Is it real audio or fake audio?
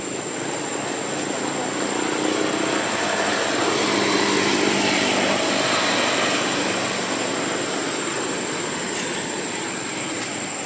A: real